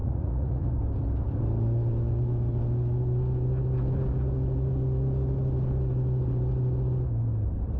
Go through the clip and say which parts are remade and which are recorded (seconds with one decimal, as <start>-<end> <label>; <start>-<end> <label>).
0.0-0.7 remade; 0.7-7.8 recorded